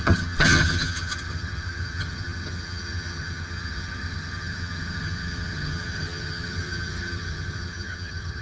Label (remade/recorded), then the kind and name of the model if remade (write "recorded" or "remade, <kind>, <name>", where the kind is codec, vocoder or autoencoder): remade, vocoder, HiFi-GAN